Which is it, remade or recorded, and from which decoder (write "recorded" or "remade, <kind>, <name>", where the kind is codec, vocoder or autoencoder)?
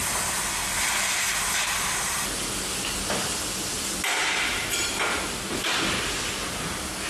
recorded